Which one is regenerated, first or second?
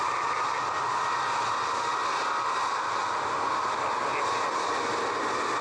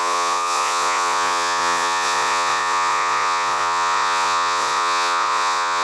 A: second